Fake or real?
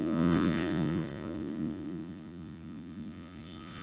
fake